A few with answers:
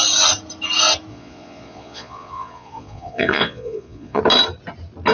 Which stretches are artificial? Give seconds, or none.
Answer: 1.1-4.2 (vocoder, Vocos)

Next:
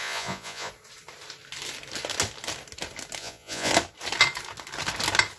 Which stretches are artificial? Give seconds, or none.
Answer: 0.0-0.7 (vocoder, Vocos); 3.2-3.7

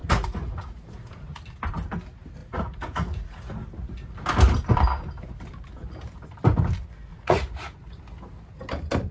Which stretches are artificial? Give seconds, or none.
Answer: 0.0-1.4 (vocoder, Vocos); 2.4-3.4; 7.1-8.0

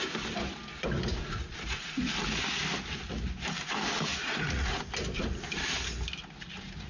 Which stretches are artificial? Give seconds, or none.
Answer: 1.1-2.1 (vocoder, Vocos); 4.1-4.8

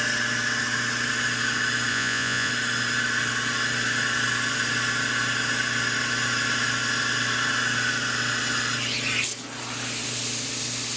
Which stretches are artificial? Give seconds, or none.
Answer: 1.9-2.5 (vocoder, Vocos)

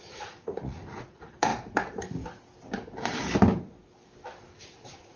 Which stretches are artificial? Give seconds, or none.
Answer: 0.0-1.5 (vocoder, Vocos); 4.6-5.2

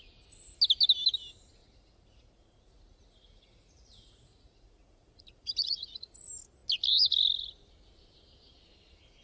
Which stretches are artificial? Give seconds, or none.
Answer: 1.6-6.1 (vocoder, Vocos)

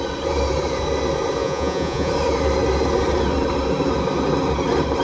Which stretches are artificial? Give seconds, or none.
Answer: 1.4-2.1 (vocoder, Vocos)